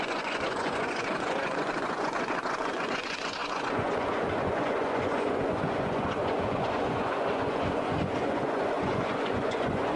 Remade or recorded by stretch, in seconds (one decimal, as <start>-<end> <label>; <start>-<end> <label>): 0.0-10.0 remade